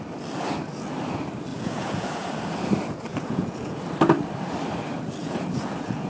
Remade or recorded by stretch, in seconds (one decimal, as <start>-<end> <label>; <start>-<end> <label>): 0.0-1.5 recorded; 1.5-2.3 remade; 2.3-3.1 recorded; 3.1-3.9 remade; 3.9-5.2 recorded; 5.2-6.1 remade